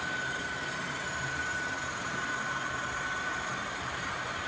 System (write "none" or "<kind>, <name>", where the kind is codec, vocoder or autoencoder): vocoder, BigVGAN v2